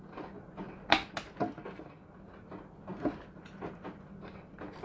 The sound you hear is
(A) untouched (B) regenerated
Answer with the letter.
A